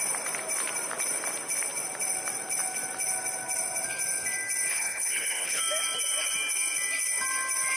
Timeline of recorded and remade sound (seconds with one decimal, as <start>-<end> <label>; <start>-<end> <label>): 0.0-4.7 recorded; 4.7-5.6 remade; 5.6-7.8 recorded